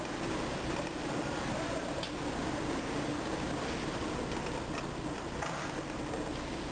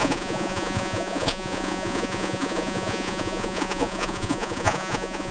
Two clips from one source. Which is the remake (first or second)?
second